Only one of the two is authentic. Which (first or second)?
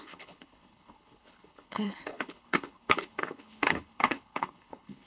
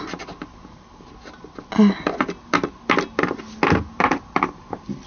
second